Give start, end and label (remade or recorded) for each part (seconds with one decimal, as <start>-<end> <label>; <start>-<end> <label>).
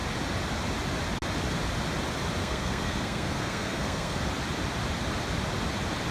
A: 0.0-2.4 recorded; 2.4-4.2 remade; 4.2-6.1 recorded